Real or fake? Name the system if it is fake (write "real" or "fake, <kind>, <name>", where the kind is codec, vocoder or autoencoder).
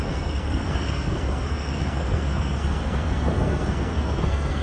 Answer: fake, codec, SNAC